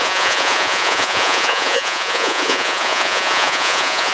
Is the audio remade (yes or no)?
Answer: yes